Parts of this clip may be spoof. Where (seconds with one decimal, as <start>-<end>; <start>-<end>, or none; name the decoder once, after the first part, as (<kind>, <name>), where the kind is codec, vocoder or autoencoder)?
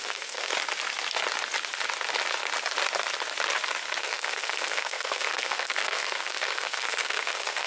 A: 0.0-0.5 (codec, SNAC); 4.0-7.7